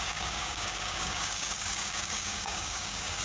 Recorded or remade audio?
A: remade